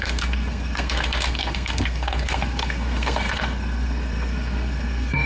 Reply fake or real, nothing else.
fake